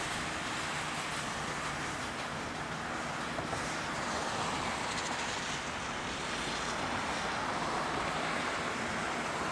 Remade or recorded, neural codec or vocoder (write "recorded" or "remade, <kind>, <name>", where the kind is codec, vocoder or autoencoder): recorded